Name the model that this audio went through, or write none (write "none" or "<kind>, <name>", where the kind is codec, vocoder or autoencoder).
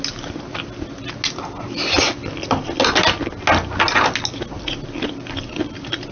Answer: none